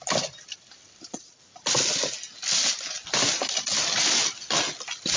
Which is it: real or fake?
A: real